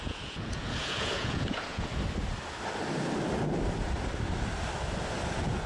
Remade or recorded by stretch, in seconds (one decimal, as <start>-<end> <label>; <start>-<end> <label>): 0.0-1.9 remade; 1.9-5.3 recorded; 5.3-5.7 remade